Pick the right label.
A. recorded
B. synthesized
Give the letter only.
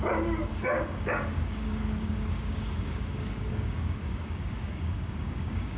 B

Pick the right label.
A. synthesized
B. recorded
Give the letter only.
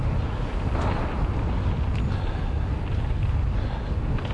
B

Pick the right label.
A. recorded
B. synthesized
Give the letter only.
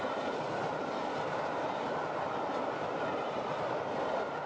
A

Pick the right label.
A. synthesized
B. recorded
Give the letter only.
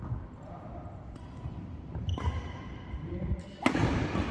B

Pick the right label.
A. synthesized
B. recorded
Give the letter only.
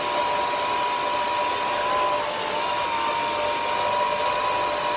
B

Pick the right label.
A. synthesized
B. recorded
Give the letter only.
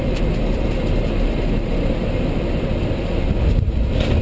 A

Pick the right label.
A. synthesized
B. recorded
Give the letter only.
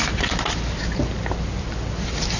B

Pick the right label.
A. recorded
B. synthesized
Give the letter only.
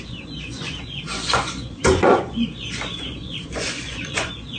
B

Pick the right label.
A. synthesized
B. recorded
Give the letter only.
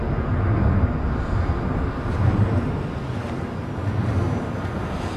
B